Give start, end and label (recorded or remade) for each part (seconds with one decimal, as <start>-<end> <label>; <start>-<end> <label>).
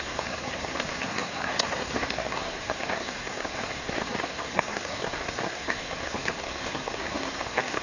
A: 0.0-7.8 remade